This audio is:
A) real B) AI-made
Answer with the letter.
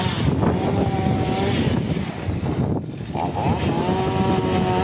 A